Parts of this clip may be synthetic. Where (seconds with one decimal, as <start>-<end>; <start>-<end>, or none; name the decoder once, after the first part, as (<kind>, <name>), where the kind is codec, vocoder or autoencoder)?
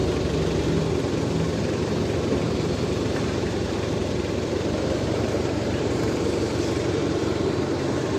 1.6-8.2 (vocoder, BigVGAN v2)